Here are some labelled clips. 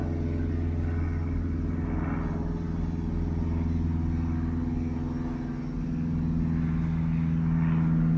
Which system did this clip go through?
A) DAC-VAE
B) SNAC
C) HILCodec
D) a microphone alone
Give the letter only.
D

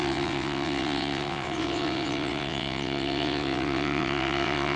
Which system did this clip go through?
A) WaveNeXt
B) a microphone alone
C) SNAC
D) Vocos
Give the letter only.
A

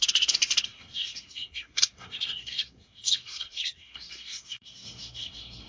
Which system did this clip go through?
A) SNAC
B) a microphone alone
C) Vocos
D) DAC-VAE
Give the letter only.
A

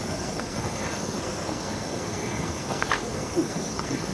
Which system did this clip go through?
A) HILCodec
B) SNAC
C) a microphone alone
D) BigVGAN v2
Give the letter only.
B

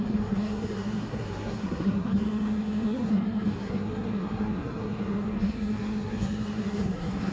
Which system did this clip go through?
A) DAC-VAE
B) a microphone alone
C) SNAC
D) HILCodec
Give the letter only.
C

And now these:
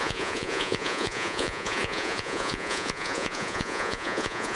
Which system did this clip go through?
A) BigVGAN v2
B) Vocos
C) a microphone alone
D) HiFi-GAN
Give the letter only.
B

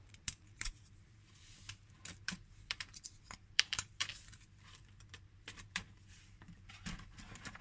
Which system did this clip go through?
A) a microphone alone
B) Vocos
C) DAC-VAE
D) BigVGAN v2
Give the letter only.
D